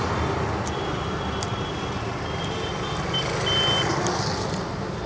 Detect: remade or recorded recorded